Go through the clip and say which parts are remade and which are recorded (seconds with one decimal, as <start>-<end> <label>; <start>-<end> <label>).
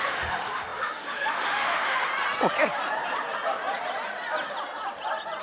0.0-2.1 remade; 2.1-5.4 recorded